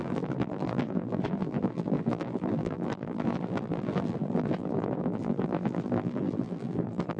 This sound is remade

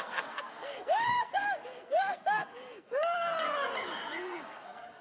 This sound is remade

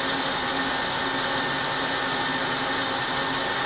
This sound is recorded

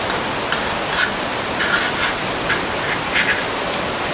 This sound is recorded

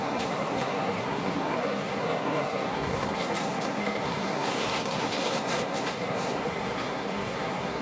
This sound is remade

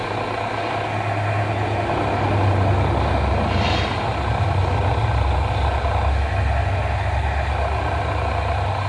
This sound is recorded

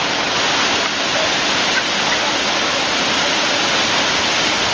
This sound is recorded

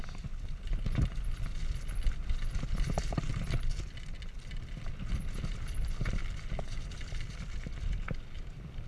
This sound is recorded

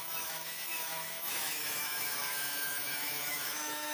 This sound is remade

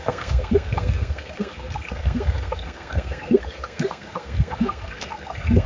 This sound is remade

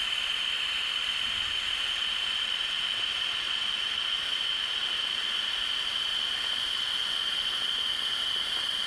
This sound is recorded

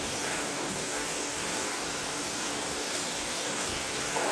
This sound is remade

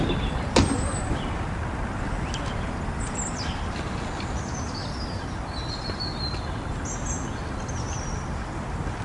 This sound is recorded